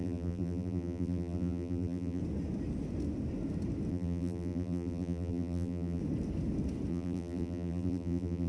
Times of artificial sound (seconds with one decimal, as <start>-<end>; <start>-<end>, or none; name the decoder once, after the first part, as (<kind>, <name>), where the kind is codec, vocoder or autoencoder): 0.0-2.2 (vocoder, BigVGAN v2); 3.9-6.0; 6.9-8.5